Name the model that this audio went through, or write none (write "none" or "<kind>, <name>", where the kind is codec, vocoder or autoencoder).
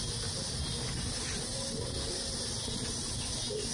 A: none